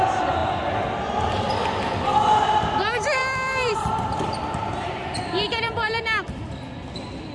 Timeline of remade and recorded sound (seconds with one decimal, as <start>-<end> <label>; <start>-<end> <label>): 0.0-3.2 recorded; 3.2-6.4 remade; 6.4-7.3 recorded